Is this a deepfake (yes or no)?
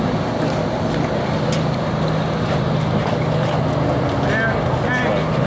no